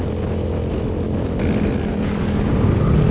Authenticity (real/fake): real